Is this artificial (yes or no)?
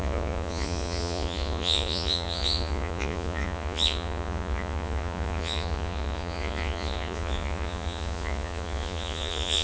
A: yes